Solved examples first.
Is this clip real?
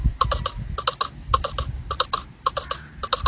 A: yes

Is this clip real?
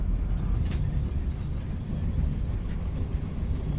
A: yes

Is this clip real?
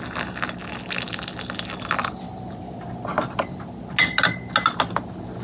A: yes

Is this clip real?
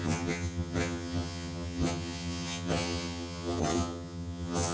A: no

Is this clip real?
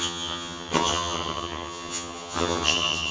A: no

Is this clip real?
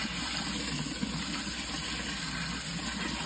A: yes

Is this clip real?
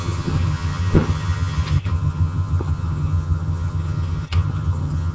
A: no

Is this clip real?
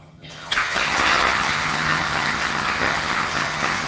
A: no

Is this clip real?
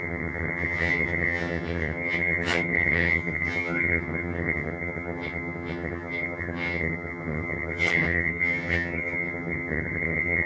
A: no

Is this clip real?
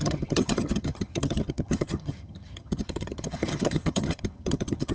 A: no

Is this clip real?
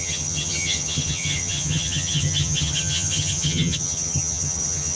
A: no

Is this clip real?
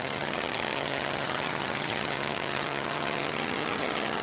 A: no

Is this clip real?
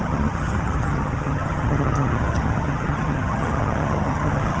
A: no